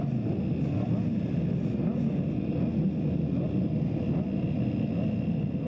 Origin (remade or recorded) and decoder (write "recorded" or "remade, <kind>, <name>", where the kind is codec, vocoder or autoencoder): recorded